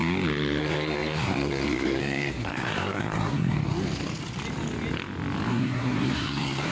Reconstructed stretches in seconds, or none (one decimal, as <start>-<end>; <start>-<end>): 0.6-3.6; 5.5-6.7